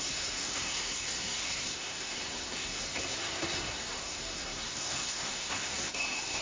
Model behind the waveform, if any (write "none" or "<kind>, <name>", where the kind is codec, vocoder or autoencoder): codec, SNAC